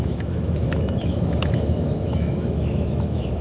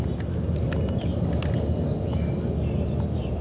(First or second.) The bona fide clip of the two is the second